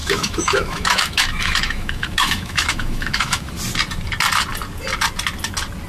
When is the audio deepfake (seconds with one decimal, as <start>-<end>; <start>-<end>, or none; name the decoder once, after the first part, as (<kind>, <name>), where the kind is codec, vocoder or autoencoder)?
0.0-3.5 (autoencoder, DAC-VAE)